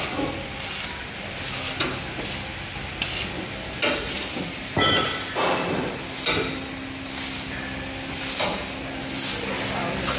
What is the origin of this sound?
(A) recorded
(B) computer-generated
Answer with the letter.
A